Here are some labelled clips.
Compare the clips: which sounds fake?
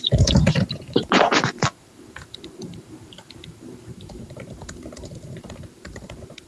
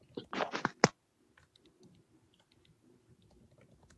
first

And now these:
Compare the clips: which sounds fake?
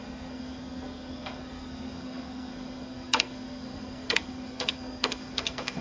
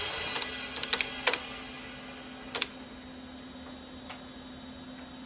first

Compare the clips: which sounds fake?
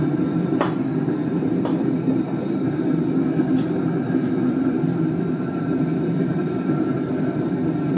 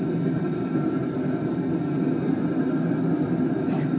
first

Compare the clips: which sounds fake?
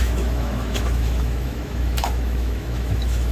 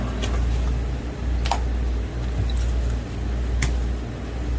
first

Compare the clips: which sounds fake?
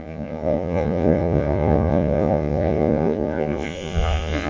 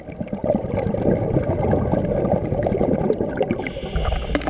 first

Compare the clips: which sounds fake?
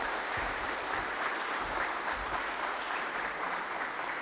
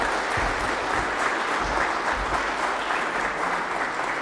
first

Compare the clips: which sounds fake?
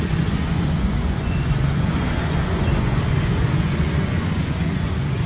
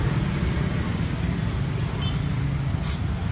first